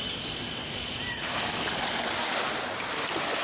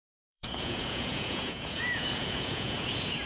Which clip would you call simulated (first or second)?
second